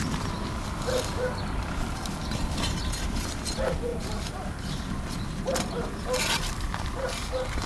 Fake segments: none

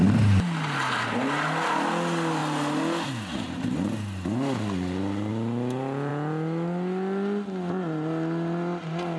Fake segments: none

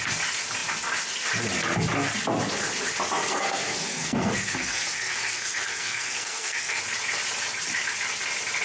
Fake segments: 3.2-6.8

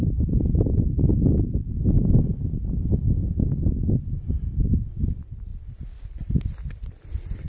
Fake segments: 5.5-7.5

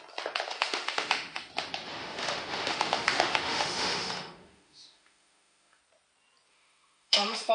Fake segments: 0.5-1.5; 2.0-5.8; 6.5-7.5

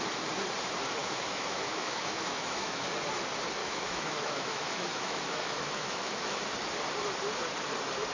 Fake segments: 1.0-2.8; 3.6-6.4